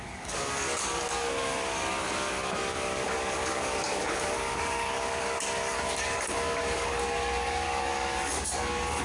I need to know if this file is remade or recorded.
remade